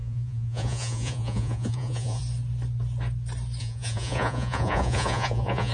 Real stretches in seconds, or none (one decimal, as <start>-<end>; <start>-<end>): 2.2-3.6